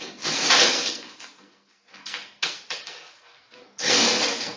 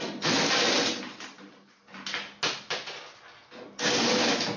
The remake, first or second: first